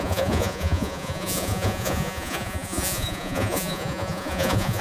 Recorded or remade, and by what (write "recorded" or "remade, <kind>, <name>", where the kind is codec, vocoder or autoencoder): remade, vocoder, Vocos